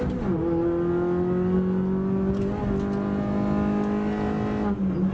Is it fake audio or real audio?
real